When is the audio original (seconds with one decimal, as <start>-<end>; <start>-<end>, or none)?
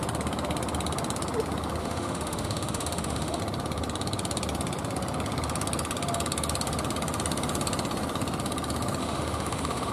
0.0-1.8; 3.4-9.0